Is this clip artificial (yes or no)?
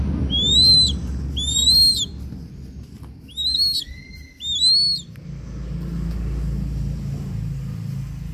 no